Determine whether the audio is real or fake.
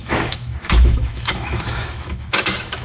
fake